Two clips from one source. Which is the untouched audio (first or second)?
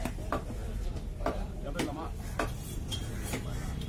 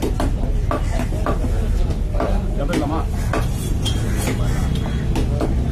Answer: second